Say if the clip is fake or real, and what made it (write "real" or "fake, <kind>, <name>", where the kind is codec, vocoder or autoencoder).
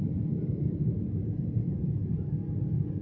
real